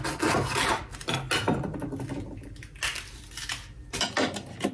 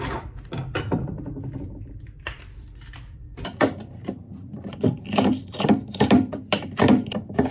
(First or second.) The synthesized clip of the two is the second